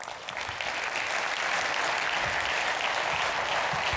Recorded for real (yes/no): yes